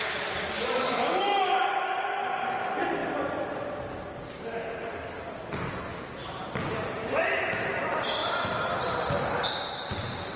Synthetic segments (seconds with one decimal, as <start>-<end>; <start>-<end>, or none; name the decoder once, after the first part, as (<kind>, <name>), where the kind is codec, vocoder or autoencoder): 5.7-6.4 (autoencoder, DAC-VAE)